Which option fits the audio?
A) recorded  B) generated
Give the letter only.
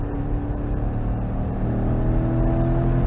A